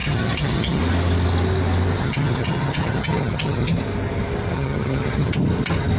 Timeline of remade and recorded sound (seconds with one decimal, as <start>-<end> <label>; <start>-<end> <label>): 0.0-0.8 remade; 0.8-2.0 recorded; 2.0-3.7 remade; 3.7-4.5 recorded; 4.5-5.3 remade; 5.3-6.0 recorded

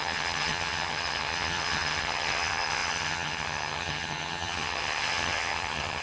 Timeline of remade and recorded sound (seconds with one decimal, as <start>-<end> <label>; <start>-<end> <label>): 0.0-6.0 remade

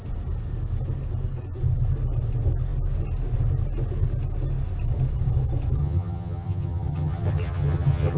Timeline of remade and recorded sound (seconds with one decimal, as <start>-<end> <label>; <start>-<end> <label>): 0.0-5.8 recorded; 5.8-8.2 remade

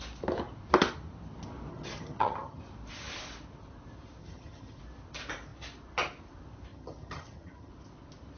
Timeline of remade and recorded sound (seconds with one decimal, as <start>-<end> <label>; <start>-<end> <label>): 0.0-1.7 recorded; 1.7-2.6 remade; 2.6-4.2 recorded; 4.2-4.8 remade; 4.8-6.7 recorded; 6.7-7.7 remade; 7.7-8.4 recorded

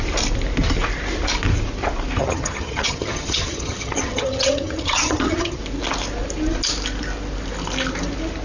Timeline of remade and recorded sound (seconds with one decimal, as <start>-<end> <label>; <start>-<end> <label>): 0.0-2.2 recorded; 2.2-5.6 remade; 5.6-8.4 recorded

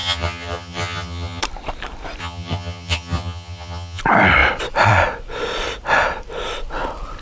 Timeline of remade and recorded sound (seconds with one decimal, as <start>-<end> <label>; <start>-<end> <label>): 0.0-1.4 remade; 1.4-2.2 recorded; 2.2-4.0 remade; 4.0-7.2 recorded